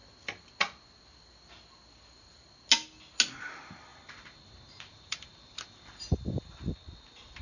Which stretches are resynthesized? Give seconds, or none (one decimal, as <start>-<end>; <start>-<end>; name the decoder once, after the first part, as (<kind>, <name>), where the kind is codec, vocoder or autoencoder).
3.9-6.7 (vocoder, BigVGAN v2)